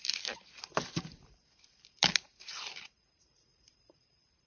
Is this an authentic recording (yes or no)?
no